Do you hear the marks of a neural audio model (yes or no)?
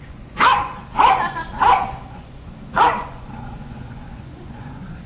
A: yes